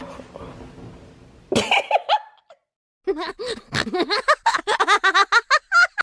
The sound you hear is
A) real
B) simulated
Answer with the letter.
A